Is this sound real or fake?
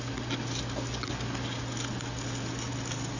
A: real